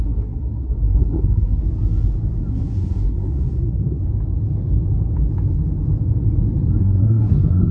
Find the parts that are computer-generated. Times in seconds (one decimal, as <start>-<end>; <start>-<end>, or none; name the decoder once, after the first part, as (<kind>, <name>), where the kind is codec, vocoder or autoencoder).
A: 0.0-1.6 (codec, SNAC); 2.5-4.0; 6.8-7.7